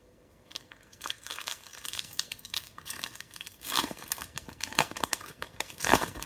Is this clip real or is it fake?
fake